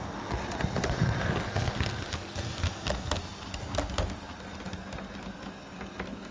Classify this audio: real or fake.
real